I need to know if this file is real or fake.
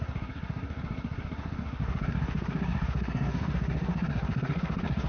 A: fake